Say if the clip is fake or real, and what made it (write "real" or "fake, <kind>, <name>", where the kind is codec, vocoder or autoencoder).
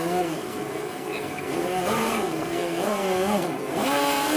fake, codec, SNAC